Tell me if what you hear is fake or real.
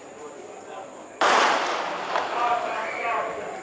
real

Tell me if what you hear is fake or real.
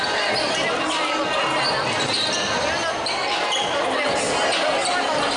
real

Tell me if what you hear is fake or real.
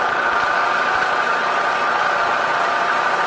real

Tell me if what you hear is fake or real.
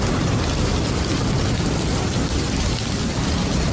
real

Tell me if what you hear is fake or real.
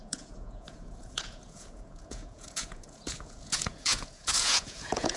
fake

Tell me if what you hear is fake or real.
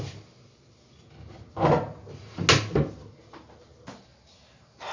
real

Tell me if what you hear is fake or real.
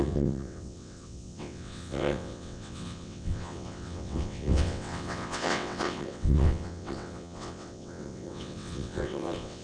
fake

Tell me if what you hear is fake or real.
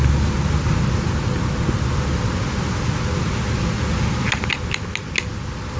real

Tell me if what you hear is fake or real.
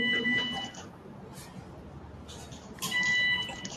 real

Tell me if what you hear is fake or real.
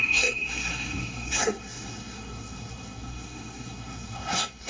fake